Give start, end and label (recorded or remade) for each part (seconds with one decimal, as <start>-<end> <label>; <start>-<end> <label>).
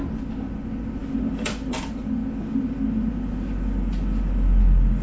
0.0-5.0 recorded